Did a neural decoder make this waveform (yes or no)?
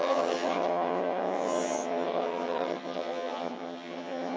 yes